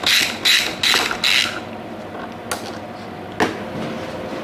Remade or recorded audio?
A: recorded